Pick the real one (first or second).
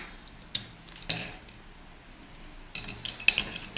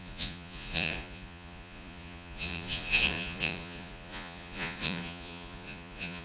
first